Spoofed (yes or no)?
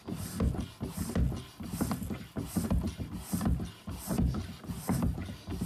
no